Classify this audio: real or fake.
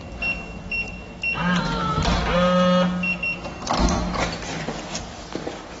real